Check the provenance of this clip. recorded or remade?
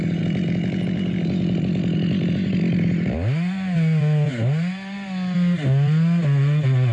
recorded